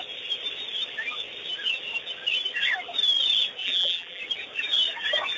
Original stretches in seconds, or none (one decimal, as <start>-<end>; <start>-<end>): 0.0-3.6; 4.2-5.4